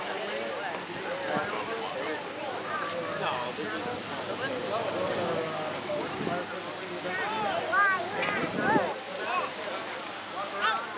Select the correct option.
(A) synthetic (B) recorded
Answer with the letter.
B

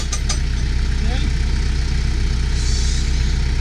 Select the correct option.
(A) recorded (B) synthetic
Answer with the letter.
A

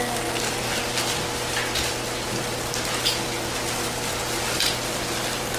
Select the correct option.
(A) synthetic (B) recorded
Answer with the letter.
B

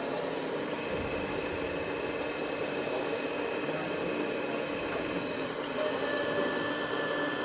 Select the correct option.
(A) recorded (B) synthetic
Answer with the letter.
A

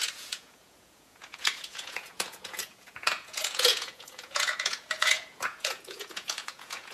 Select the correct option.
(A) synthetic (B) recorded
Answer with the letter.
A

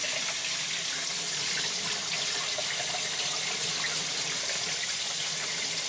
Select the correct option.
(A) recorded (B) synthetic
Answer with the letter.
A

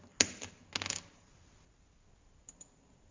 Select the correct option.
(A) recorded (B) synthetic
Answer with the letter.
A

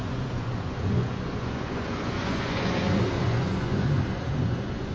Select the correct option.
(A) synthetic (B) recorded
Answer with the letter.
A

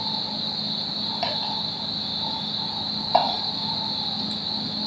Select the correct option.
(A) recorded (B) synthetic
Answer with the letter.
A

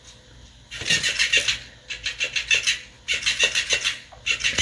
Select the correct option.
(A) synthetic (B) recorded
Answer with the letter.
B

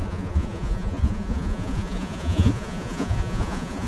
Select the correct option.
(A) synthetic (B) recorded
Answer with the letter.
A